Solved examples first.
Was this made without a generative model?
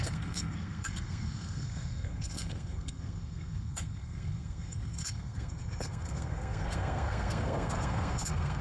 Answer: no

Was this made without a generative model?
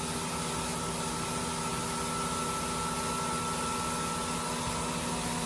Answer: yes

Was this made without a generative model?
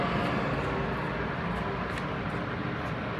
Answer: yes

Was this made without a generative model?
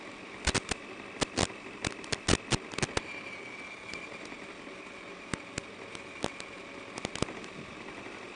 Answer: yes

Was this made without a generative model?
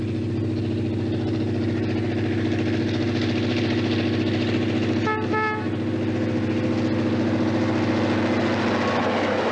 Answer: yes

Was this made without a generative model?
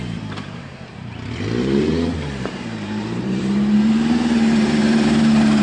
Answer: no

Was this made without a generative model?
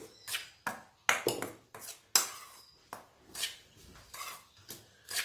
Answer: yes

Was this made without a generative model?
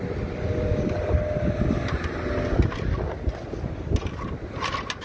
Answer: yes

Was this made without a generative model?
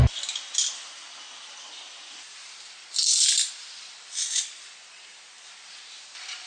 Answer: yes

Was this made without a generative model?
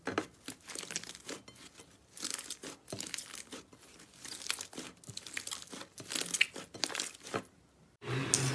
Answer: yes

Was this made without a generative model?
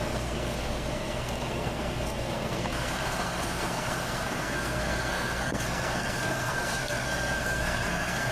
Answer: no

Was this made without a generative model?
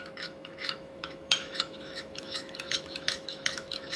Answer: no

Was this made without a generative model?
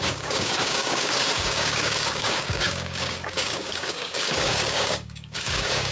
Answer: no